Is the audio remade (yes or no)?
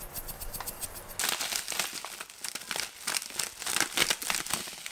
no